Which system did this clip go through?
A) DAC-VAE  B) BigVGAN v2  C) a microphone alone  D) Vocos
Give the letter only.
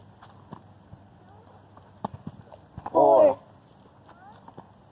C